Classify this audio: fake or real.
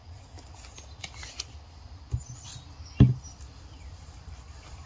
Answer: real